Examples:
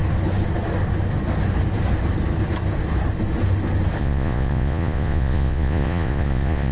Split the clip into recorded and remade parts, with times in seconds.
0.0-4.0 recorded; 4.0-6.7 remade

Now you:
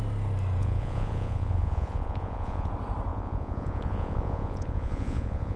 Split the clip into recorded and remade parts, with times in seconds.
0.0-0.6 recorded; 0.6-2.7 remade; 2.7-3.1 recorded; 3.1-5.6 remade